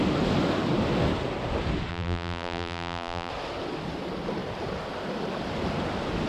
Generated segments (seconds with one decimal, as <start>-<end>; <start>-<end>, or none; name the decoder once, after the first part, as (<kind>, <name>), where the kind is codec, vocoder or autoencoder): 1.9-3.3 (vocoder, BigVGAN v2)